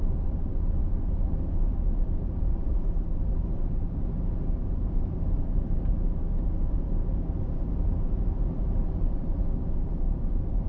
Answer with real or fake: fake